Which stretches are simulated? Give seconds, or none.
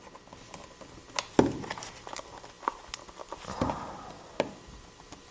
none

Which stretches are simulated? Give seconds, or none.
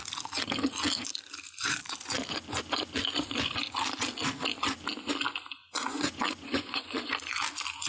5.6-7.1